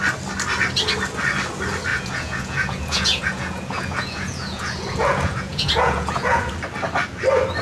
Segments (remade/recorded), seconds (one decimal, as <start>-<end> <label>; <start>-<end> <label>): 0.0-1.9 recorded; 1.9-6.5 remade; 6.5-7.6 recorded